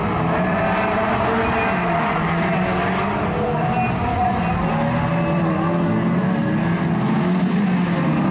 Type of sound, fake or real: real